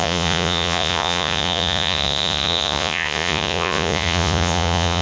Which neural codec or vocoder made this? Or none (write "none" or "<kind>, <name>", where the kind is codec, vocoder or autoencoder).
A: vocoder, Vocos